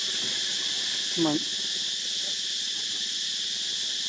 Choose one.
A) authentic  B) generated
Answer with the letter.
A